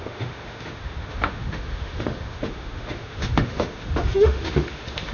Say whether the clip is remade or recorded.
remade